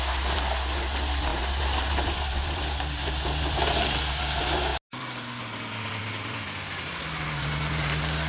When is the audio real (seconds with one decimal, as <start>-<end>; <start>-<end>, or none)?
0.0-1.3; 3.1-6.0; 7.0-8.3